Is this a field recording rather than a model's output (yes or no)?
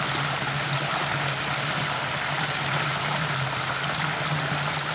yes